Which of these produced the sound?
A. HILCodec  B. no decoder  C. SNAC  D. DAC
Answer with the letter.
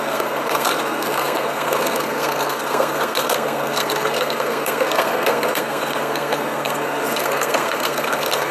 C